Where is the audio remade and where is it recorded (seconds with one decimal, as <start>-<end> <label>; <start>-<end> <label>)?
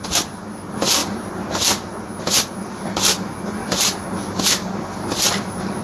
0.0-5.8 recorded